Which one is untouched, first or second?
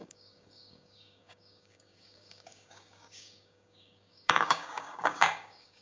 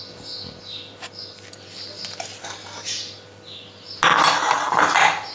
second